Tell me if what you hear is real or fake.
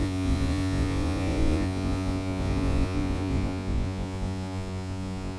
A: fake